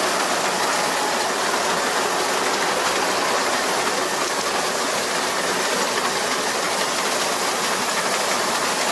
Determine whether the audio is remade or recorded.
recorded